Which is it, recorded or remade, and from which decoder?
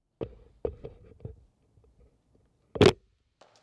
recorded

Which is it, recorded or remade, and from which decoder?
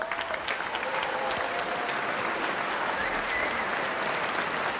recorded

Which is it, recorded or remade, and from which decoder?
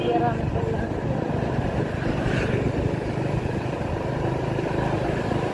recorded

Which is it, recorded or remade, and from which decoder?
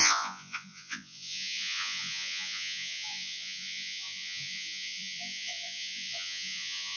remade, vocoder, Vocos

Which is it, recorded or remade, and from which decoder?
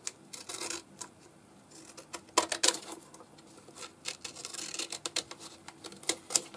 recorded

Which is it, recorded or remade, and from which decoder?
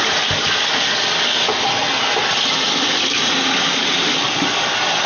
recorded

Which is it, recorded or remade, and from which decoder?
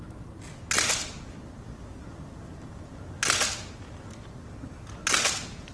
recorded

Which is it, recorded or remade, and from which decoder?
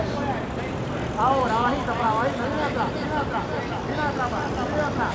recorded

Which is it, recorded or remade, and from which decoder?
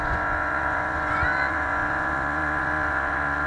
remade, vocoder, Vocos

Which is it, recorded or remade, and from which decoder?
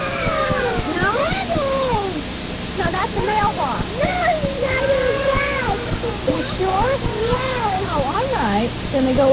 recorded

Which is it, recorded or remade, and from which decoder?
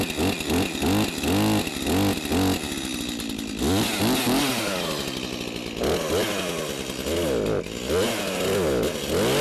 recorded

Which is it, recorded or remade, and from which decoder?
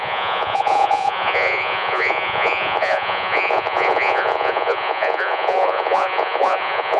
remade, vocoder, Vocos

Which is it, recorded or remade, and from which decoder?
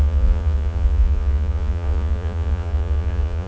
remade, vocoder, Vocos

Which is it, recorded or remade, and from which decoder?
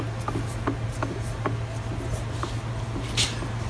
recorded